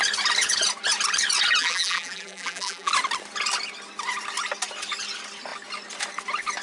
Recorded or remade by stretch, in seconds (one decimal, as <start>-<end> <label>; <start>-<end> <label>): 0.0-1.6 recorded; 1.6-2.9 remade; 2.9-6.6 recorded